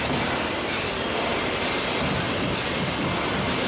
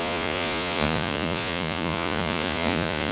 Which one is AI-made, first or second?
second